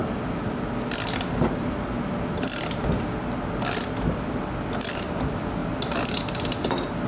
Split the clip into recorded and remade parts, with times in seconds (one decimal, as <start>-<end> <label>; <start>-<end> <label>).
0.0-7.1 recorded